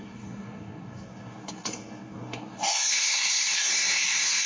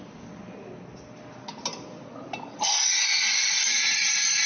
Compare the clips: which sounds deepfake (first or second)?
first